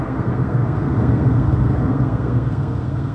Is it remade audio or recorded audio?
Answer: remade